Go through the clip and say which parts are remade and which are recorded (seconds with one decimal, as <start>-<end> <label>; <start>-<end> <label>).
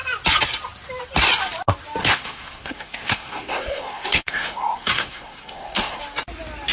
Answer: 0.0-2.0 recorded; 2.0-6.0 remade; 6.0-6.7 recorded